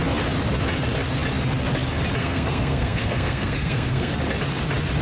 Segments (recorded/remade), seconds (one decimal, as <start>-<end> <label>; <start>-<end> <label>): 0.0-2.2 recorded; 2.2-4.1 remade; 4.1-5.0 recorded